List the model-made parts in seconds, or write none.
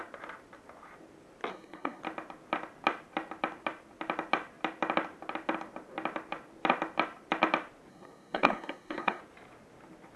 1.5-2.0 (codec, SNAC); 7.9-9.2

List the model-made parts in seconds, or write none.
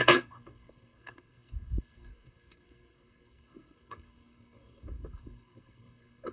0.0-6.3 (codec, SNAC)